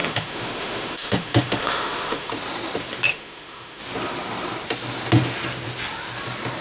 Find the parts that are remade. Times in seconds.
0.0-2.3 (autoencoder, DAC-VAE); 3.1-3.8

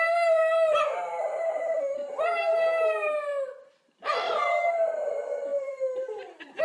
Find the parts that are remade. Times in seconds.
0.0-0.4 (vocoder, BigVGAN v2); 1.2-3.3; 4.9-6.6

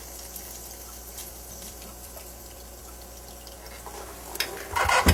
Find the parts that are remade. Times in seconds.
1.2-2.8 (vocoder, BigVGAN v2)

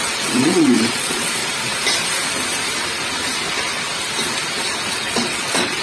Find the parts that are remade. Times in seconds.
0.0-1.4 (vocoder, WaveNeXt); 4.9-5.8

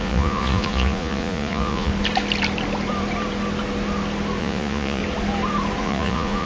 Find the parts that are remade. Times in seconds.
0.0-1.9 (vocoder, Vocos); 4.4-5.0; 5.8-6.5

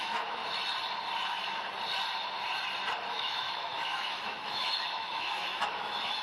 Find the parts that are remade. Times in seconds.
0.0-0.4 (autoencoder, DAC-VAE); 3.1-6.2